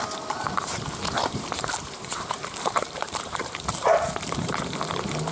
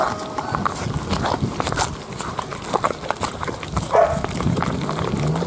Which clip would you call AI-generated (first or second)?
first